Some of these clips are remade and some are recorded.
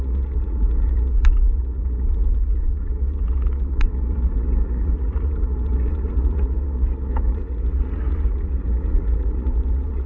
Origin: remade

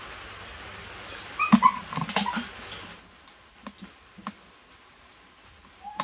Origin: recorded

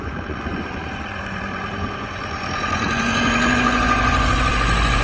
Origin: remade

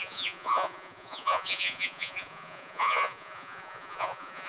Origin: remade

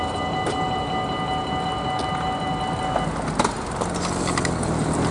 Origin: recorded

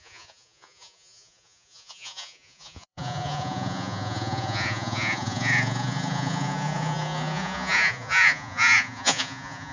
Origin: remade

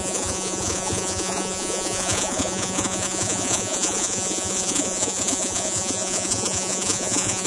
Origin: remade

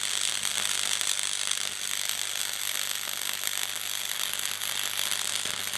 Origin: recorded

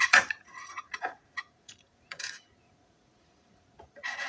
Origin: remade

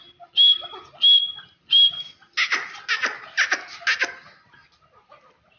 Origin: recorded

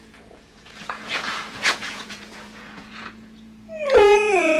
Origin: remade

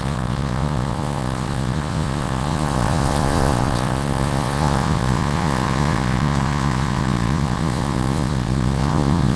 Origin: remade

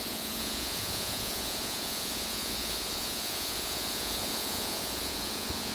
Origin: remade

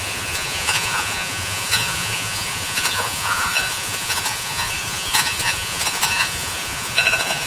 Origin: remade